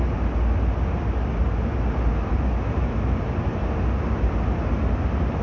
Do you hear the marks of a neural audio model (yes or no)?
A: no